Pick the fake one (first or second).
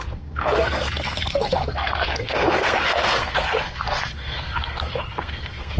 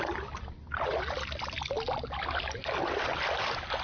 first